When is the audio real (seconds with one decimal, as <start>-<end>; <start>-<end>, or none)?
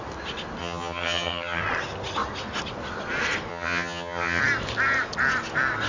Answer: 0.0-0.6; 1.6-3.5; 4.4-5.9